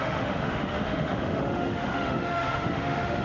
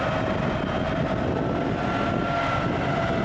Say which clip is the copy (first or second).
first